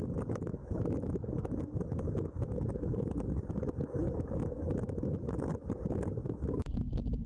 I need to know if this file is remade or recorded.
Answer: remade